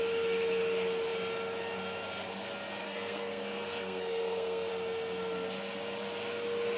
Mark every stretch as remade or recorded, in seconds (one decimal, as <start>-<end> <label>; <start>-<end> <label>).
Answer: 0.0-2.8 recorded; 2.8-4.7 remade; 4.7-6.8 recorded